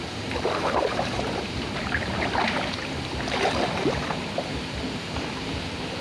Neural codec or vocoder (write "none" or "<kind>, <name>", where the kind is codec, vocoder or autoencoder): vocoder, BigVGAN v2